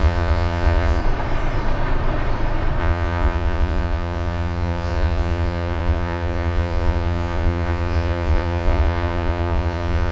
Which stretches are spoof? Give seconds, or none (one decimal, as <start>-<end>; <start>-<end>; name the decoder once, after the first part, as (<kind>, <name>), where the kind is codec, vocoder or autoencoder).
0.0-1.0 (vocoder, Vocos); 2.8-10.1